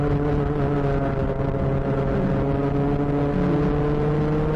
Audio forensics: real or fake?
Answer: real